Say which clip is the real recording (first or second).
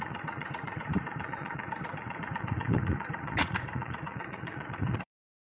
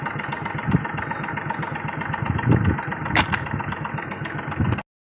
second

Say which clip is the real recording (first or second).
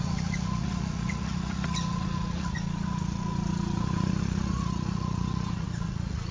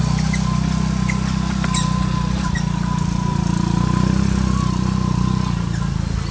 second